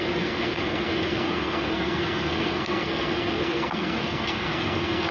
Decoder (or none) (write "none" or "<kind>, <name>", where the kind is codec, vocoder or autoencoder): codec, SNAC